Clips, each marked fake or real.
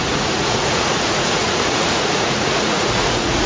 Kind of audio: fake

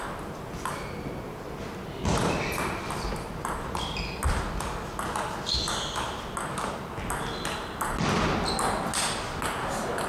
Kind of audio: real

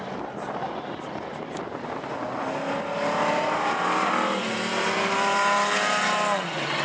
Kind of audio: real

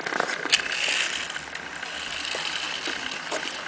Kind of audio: real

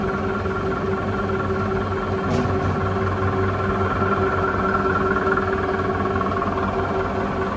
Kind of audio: real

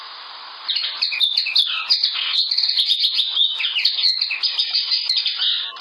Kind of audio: real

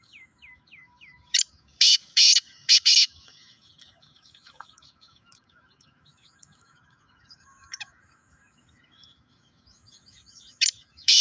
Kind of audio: fake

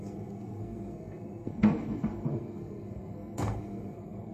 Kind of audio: fake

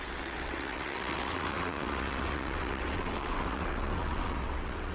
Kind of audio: fake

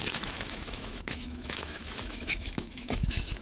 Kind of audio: fake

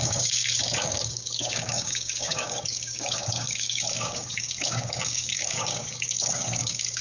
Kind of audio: fake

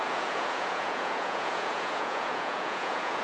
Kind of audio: fake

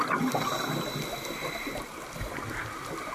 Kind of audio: fake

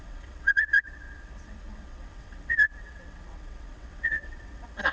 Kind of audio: fake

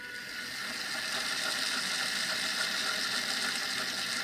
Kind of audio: real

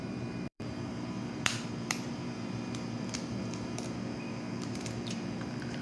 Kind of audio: fake